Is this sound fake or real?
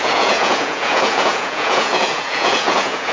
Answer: fake